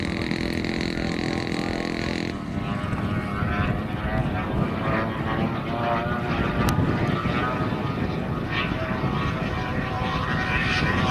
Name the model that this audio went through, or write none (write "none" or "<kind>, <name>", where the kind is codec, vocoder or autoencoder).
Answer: none